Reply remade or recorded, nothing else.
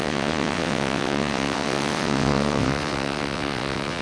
remade